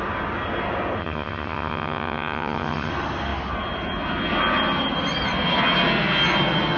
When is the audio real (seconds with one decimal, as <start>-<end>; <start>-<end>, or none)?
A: 0.0-1.0; 2.9-6.8